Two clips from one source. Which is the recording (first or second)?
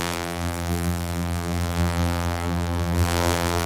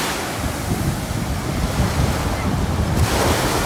second